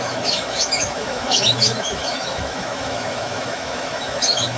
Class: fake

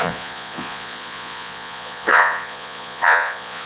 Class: fake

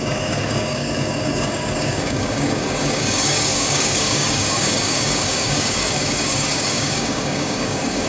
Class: fake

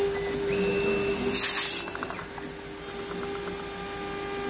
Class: real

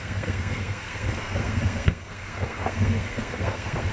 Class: fake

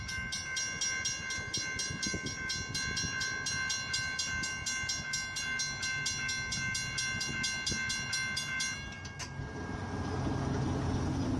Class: real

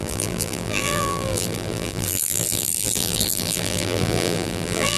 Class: fake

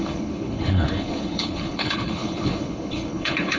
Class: fake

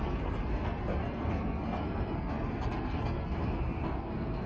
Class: fake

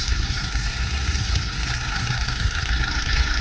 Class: fake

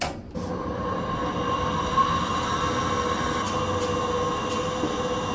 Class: real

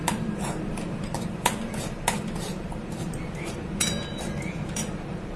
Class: fake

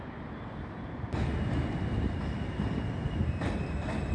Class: real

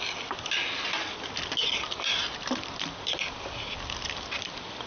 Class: real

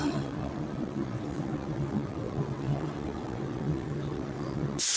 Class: fake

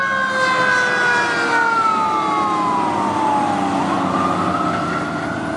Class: real